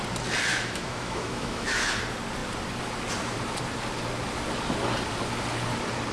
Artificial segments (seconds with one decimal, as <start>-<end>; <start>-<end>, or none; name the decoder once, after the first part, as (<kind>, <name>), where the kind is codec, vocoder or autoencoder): 0.5-1.9 (autoencoder, DAC-VAE)